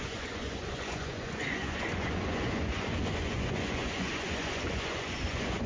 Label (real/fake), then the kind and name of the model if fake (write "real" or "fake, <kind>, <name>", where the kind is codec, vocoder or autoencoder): fake, vocoder, Vocos